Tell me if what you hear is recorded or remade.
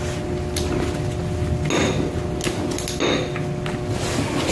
recorded